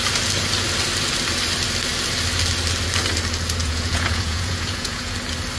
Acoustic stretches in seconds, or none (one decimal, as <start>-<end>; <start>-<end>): 0.0-3.6; 5.1-5.6